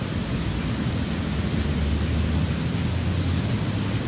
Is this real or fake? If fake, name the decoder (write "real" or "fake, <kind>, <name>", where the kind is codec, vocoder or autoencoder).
real